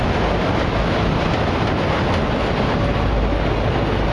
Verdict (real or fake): real